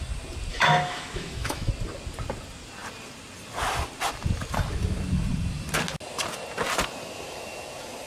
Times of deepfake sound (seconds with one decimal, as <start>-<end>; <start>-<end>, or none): 0.5-1.7